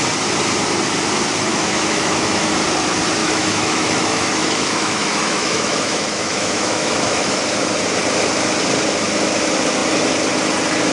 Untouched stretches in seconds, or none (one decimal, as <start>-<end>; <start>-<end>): 0.0-1.5; 2.5-3.2; 7.4-10.9